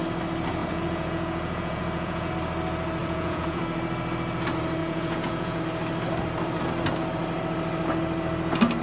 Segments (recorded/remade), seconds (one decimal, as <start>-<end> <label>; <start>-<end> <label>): 0.0-0.6 recorded; 0.6-2.3 remade; 2.3-3.0 recorded; 3.0-3.6 remade; 3.6-4.8 recorded; 4.8-5.6 remade; 5.6-8.8 recorded